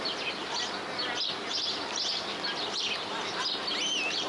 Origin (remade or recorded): recorded